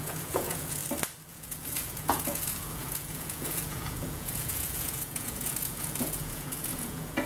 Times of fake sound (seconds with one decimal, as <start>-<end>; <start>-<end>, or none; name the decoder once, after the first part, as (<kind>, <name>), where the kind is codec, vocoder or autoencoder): 0.0-0.8 (vocoder, Vocos); 1.3-7.3